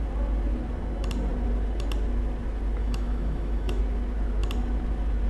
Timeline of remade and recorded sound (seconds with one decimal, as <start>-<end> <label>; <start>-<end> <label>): 0.0-2.8 recorded; 2.8-3.8 remade; 3.8-5.3 recorded

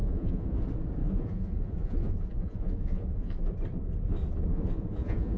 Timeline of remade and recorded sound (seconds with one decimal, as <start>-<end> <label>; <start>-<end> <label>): 0.0-0.6 remade; 0.6-1.0 recorded; 1.0-3.3 remade; 3.3-4.5 recorded; 4.5-5.4 remade

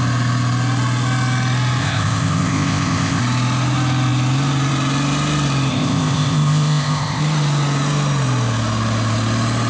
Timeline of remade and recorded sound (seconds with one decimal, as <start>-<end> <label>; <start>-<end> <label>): 0.0-1.8 recorded; 1.8-3.2 remade; 3.2-5.7 recorded; 5.7-7.2 remade; 7.2-9.7 recorded